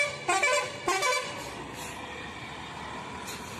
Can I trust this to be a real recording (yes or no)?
yes